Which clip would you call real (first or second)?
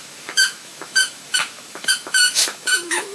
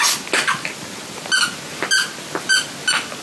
second